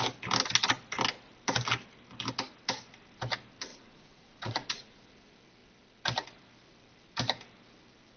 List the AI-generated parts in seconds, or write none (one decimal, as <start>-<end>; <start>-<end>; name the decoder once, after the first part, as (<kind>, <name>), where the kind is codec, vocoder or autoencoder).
3.7-5.0 (vocoder, Vocos)